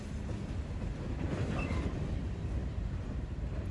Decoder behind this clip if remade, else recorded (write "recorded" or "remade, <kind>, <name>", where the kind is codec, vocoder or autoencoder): remade, vocoder, BigVGAN v2